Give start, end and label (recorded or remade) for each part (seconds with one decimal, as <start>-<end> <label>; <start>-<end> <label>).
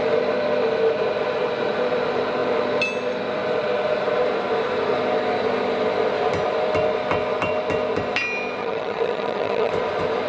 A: 0.0-8.6 recorded; 8.6-9.7 remade; 9.7-10.3 recorded